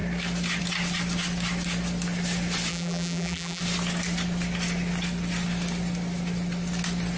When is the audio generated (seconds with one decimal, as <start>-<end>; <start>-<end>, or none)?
2.7-3.6